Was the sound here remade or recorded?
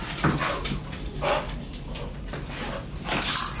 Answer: recorded